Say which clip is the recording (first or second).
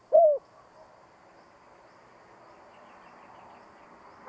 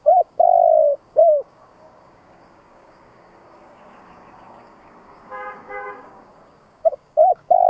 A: first